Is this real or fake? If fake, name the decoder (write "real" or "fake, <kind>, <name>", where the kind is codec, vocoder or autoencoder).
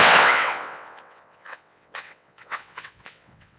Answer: fake, vocoder, WaveNeXt